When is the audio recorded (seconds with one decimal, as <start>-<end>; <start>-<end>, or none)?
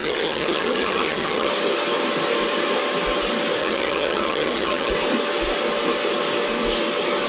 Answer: 1.5-3.6; 4.9-7.3